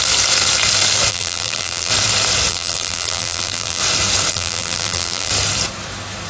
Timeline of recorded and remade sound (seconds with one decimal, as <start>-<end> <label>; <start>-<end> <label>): 0.0-1.1 recorded; 1.1-1.9 remade; 1.9-2.5 recorded; 2.5-3.8 remade; 3.8-4.3 recorded; 4.3-5.3 remade; 5.3-6.3 recorded